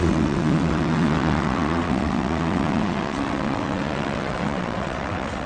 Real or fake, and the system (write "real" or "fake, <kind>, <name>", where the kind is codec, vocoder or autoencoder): fake, vocoder, WaveNeXt